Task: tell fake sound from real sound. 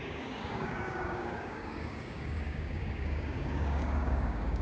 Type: fake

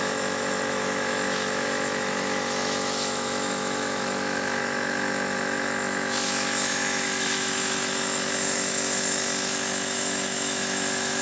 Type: fake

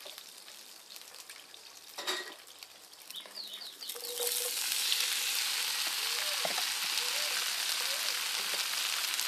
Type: real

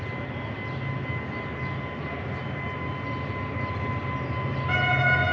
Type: real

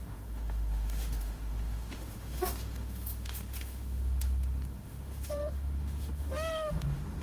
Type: fake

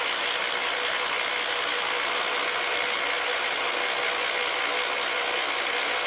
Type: real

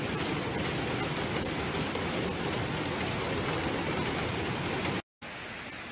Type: real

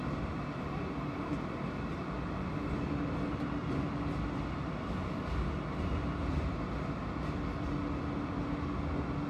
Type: real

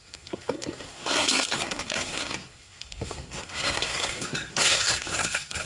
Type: fake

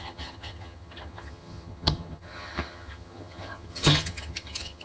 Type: fake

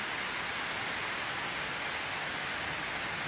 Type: real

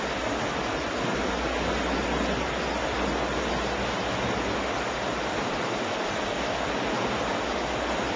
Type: real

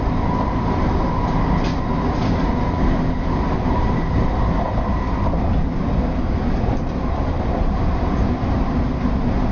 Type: real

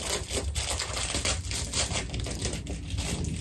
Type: real